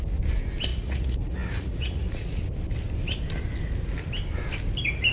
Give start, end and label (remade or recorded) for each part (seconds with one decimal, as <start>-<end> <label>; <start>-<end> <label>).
0.0-0.7 recorded; 0.7-2.4 remade; 2.4-5.1 recorded